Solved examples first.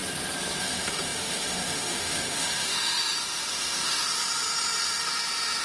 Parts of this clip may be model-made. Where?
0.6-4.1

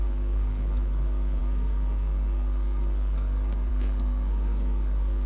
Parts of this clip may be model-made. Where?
0.0-5.3

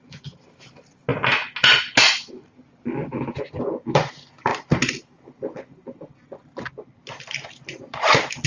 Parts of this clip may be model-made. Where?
none